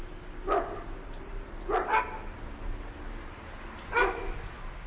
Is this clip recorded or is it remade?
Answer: recorded